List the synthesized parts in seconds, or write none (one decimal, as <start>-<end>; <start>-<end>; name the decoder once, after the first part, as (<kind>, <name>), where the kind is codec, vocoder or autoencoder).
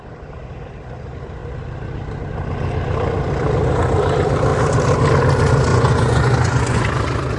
5.7-6.8 (vocoder, Vocos)